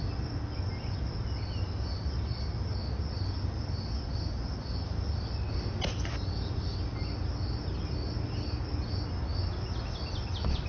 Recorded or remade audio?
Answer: recorded